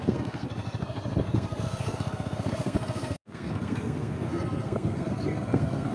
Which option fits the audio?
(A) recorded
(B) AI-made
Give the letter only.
B